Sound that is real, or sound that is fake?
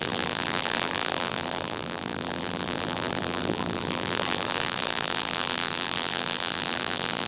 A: fake